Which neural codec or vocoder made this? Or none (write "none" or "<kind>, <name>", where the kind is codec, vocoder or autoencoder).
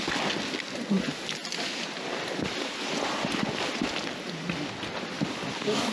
none